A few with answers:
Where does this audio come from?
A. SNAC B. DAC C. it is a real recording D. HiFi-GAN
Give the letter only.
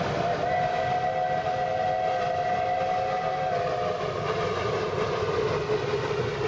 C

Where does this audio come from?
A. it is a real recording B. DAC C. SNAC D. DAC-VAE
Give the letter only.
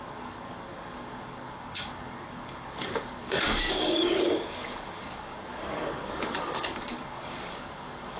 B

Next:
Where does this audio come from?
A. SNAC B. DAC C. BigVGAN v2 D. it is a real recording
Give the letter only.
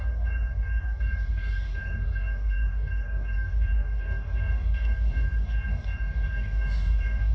B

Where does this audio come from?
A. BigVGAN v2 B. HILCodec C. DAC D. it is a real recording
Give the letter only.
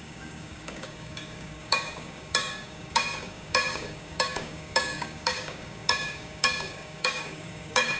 C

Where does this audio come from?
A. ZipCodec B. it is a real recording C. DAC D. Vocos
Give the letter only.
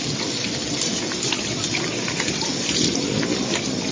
B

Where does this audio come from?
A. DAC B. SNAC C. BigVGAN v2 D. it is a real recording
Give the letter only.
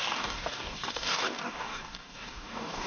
A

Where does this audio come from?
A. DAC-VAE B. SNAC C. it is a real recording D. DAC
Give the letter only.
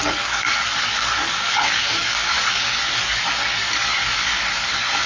D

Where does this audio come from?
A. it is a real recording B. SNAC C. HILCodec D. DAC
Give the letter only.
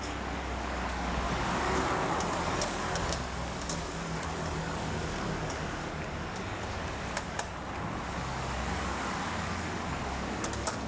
D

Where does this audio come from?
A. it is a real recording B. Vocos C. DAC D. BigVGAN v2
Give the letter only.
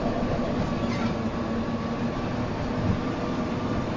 A